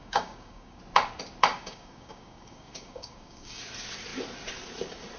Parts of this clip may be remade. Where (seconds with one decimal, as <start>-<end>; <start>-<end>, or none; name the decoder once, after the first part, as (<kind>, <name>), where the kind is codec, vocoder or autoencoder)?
0.0-0.8 (codec, DAC); 1.5-3.6